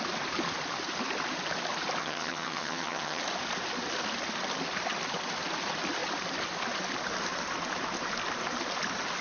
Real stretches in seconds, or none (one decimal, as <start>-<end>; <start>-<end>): 0.0-2.0; 3.2-9.2